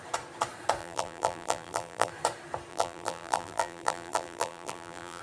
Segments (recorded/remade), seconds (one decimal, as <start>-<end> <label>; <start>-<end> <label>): 0.0-0.8 recorded; 0.8-2.1 remade; 2.1-2.7 recorded; 2.7-5.2 remade